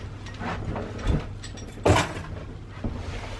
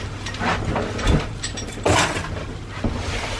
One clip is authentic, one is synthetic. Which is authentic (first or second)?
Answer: first